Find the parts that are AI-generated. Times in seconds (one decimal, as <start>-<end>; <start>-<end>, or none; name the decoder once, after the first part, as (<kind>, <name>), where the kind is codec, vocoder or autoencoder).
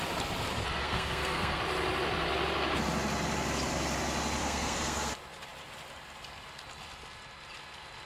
0.8-1.6 (codec, SNAC); 4.4-5.1